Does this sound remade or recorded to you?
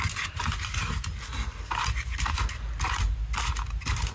recorded